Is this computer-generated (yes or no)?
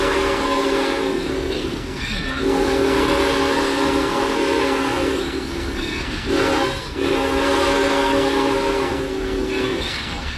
yes